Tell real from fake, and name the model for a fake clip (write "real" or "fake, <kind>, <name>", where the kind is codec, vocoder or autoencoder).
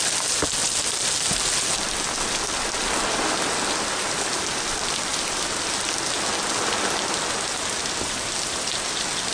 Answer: real